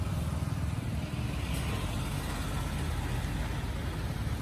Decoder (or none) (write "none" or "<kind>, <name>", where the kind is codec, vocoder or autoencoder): none